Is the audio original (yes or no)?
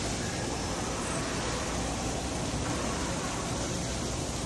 yes